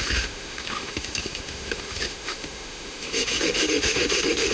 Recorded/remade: remade